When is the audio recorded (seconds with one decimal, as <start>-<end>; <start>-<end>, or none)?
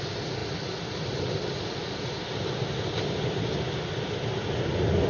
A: 0.0-5.1